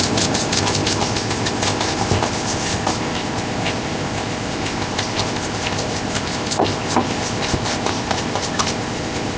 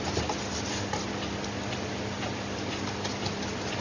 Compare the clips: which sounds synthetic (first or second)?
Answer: first